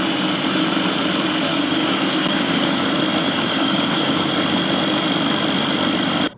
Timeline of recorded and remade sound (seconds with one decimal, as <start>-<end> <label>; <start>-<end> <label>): 0.0-1.5 recorded; 1.5-2.8 remade; 2.8-3.2 recorded; 3.2-4.3 remade; 4.3-6.4 recorded